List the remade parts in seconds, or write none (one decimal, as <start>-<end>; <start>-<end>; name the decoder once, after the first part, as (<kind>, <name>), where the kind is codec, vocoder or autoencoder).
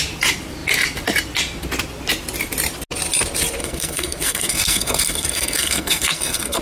3.6-6.6 (codec, SNAC)